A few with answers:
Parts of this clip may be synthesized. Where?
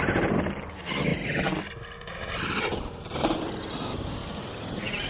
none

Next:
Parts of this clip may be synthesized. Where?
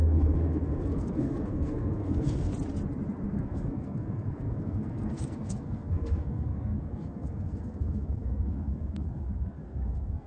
0.0-2.5 (codec, SNAC); 3.3-10.3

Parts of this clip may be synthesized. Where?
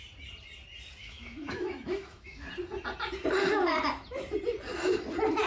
1.0-2.5 (autoencoder, DAC-VAE)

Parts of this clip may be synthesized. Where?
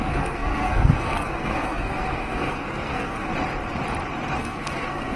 0.0-3.3 (codec, SNAC); 4.4-5.2